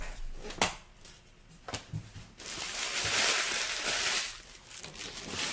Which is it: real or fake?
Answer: real